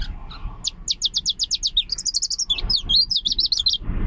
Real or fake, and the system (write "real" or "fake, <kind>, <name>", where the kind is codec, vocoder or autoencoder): real